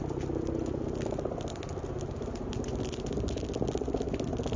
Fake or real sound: real